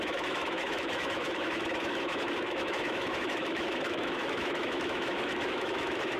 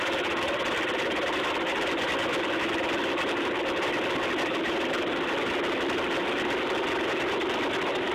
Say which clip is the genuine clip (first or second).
second